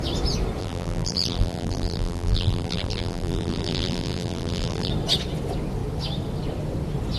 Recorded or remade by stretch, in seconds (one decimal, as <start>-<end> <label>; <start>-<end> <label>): 0.0-0.6 recorded; 0.6-4.9 remade; 4.9-7.2 recorded